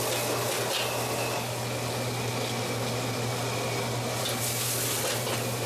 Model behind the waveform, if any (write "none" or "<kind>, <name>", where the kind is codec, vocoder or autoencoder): none